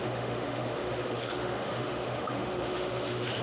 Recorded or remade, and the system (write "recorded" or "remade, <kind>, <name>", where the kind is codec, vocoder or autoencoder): remade, autoencoder, DAC-VAE